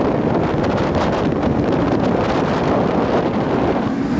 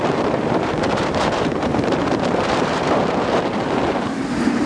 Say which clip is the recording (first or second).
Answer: first